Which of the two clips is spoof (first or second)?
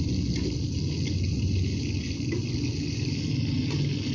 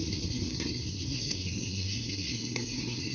second